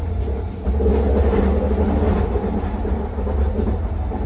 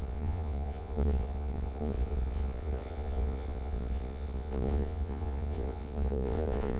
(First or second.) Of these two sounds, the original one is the first